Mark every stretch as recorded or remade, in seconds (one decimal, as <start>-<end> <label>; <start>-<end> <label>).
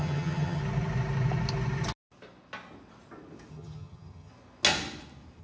0.0-0.6 remade; 0.6-3.5 recorded; 3.5-4.3 remade; 4.3-5.4 recorded